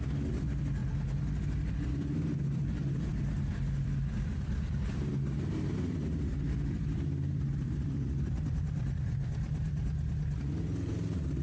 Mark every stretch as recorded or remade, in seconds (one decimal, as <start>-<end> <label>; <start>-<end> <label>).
0.0-3.1 recorded; 3.1-5.1 remade; 5.1-6.3 recorded; 6.3-9.8 remade; 9.8-11.4 recorded